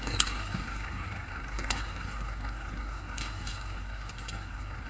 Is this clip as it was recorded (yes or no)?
no